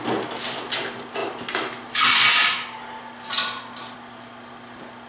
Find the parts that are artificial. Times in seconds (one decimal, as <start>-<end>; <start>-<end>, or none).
none

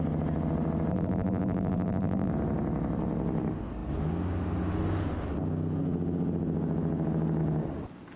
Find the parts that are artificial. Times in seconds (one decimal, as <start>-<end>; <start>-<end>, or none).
0.9-2.3

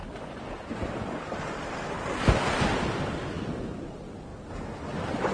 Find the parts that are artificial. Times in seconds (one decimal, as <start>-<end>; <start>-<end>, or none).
none